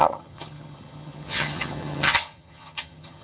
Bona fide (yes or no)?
no